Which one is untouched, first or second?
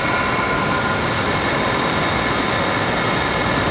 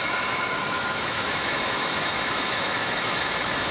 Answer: first